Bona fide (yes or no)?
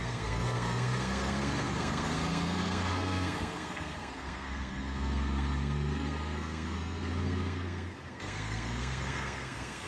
no